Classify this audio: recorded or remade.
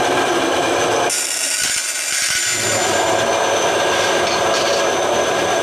recorded